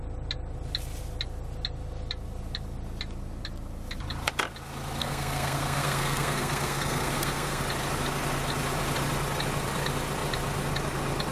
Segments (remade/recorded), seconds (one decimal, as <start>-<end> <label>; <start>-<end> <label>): 0.0-5.0 recorded; 5.0-7.6 remade; 7.6-11.3 recorded